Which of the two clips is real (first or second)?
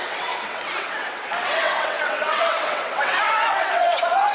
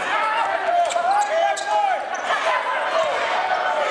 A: second